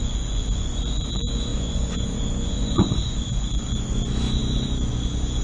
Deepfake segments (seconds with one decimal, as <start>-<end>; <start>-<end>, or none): 0.0-5.4